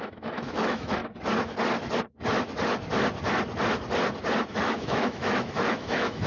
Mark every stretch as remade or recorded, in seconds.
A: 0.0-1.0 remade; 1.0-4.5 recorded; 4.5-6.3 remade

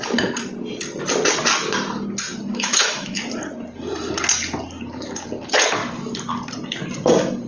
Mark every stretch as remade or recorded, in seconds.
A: 0.0-2.5 recorded; 2.5-3.2 remade; 3.2-7.5 recorded